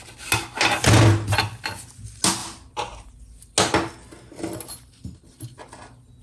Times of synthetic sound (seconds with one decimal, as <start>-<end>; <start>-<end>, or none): none